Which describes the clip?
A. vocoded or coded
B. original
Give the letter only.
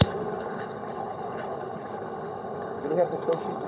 A